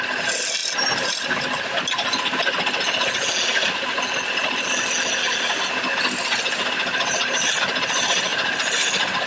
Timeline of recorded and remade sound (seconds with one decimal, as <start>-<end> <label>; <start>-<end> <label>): 0.0-9.3 recorded